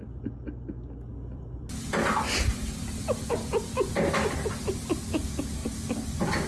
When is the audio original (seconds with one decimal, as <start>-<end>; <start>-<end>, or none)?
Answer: 0.0-1.1; 5.0-6.5